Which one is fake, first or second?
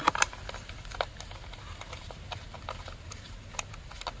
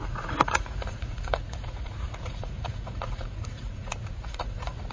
second